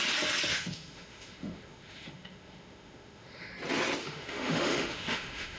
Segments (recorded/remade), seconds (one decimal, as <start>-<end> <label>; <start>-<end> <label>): 0.0-0.5 recorded; 0.5-3.5 remade; 3.5-4.0 recorded; 4.0-5.6 remade